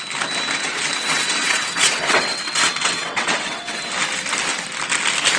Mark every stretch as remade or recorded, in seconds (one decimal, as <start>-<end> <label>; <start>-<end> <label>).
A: 0.0-0.6 recorded; 0.6-3.8 remade; 3.8-5.4 recorded